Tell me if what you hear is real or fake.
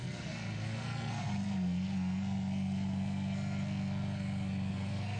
fake